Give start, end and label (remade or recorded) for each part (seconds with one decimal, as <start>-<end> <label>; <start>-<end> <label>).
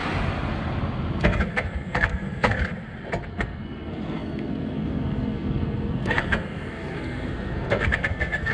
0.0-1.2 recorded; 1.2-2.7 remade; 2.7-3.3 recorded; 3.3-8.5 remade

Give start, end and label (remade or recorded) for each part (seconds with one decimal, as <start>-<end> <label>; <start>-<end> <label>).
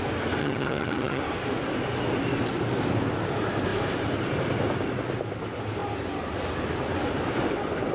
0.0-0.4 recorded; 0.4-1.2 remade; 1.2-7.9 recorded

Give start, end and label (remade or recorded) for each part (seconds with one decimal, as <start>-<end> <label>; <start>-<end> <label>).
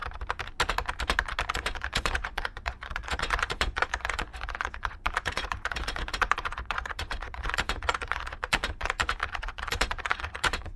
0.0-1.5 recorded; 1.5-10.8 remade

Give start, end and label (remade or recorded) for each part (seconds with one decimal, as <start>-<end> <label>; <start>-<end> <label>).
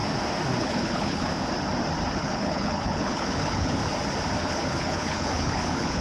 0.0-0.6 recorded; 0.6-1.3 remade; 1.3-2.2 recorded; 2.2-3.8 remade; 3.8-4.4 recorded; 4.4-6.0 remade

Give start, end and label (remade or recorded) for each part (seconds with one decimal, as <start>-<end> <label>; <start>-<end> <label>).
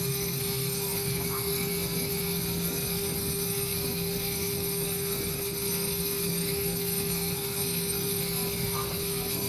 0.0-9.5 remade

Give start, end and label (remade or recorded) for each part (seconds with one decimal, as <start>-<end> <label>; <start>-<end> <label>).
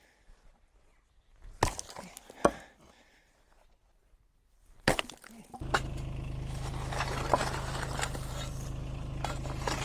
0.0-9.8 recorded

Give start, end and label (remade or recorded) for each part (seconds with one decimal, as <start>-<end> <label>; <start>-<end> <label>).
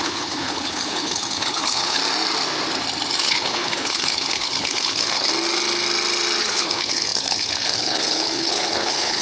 0.0-2.0 remade; 2.0-3.2 recorded; 3.2-5.3 remade; 5.3-6.4 recorded; 6.4-9.2 remade